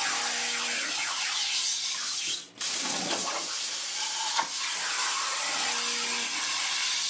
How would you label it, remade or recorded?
recorded